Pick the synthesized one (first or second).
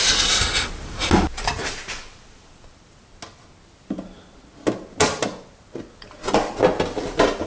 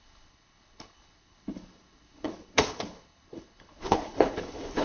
second